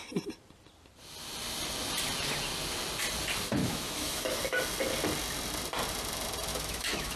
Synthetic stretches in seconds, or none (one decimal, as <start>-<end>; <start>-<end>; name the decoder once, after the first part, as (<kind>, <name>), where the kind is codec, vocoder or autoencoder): 3.6-4.4 (autoencoder, DAC-VAE); 6.5-7.2